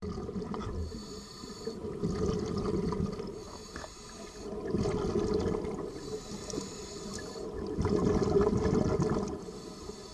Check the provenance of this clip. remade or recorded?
recorded